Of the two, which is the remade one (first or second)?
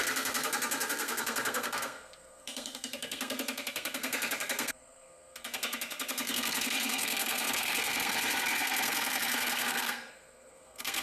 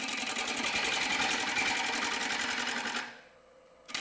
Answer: first